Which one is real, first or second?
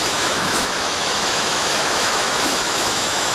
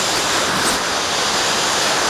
second